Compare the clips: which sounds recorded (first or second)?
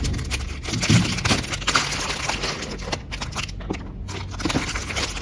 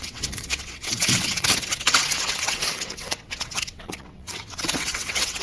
first